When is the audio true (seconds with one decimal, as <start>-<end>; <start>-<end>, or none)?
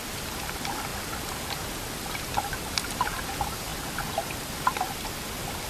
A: 0.0-5.7